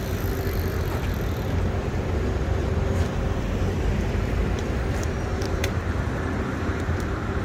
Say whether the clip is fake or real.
fake